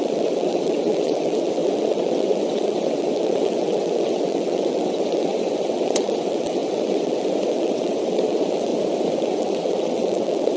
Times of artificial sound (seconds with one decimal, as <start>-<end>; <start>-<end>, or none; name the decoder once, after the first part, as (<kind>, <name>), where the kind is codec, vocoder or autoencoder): 0.0-8.7 (vocoder, WaveNeXt); 9.2-10.6